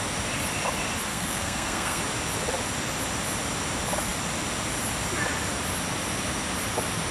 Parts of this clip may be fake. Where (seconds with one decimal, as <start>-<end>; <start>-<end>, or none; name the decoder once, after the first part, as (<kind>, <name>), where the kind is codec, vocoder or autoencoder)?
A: 1.1-2.0 (codec, SNAC)